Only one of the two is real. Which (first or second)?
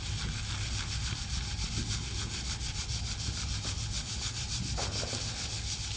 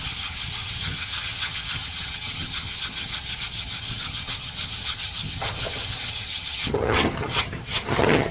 first